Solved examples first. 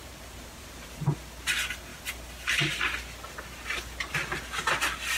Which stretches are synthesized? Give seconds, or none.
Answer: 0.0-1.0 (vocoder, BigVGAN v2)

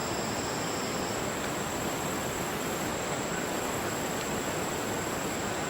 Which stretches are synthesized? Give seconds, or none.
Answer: 0.0-1.5 (vocoder, BigVGAN v2); 2.9-3.9

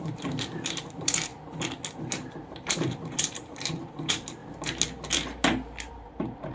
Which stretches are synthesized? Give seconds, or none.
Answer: 0.0-1.3 (vocoder, BigVGAN v2); 2.0-4.4; 5.9-6.5